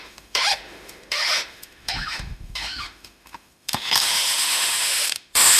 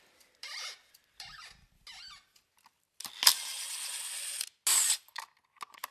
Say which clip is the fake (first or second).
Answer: first